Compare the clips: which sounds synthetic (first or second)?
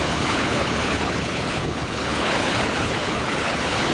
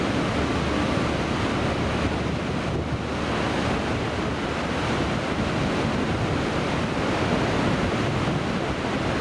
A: first